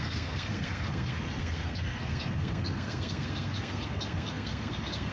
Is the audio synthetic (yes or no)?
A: yes